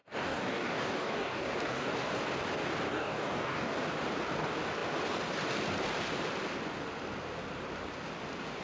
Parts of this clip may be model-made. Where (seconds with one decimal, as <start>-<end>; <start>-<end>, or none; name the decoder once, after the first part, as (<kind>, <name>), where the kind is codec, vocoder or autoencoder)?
0.0-2.2 (codec, DAC); 2.9-3.7